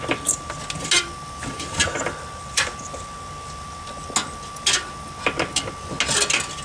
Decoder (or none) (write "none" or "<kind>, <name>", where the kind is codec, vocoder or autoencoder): none